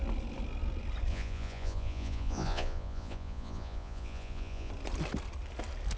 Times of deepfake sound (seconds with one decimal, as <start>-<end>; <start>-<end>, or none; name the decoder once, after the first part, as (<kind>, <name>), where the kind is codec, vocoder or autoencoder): 1.1-4.7 (vocoder, Vocos)